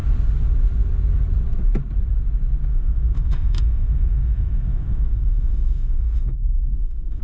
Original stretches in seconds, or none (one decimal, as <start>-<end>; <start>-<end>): 0.0-2.7